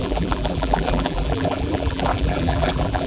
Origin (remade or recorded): remade